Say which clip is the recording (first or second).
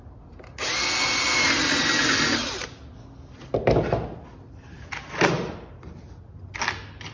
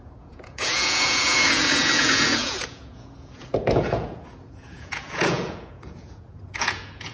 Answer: first